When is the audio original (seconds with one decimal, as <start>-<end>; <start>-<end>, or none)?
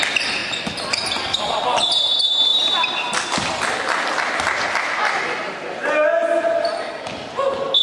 0.0-7.8